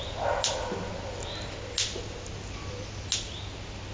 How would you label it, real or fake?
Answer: real